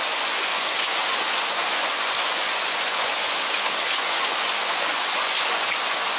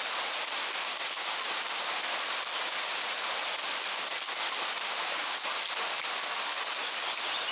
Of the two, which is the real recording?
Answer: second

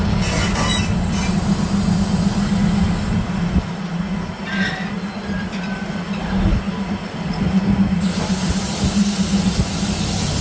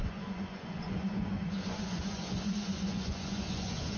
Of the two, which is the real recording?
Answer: first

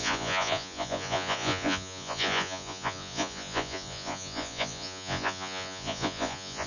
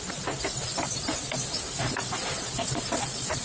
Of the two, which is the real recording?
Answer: second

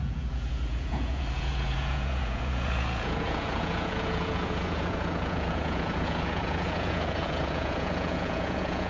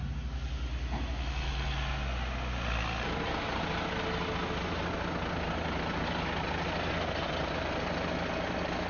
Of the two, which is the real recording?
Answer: second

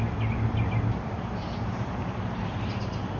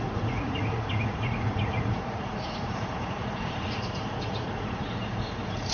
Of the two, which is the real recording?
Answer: first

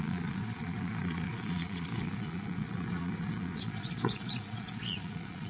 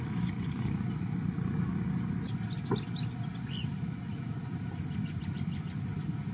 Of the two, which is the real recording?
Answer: second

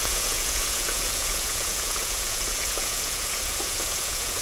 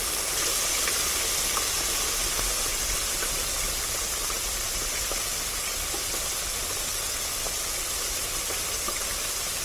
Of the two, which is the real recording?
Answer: second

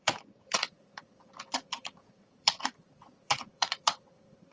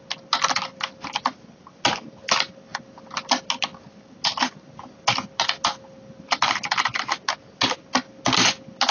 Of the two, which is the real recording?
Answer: second